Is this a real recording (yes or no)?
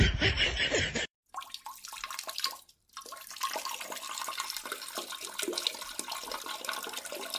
no